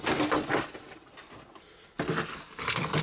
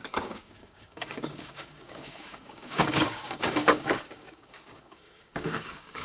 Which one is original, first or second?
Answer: first